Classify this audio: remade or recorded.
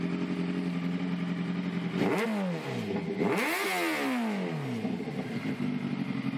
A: recorded